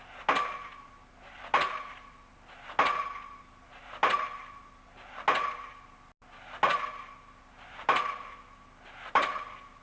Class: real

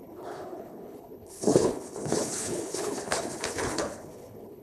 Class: fake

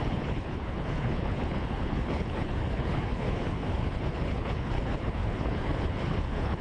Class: fake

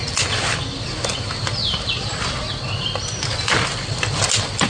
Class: real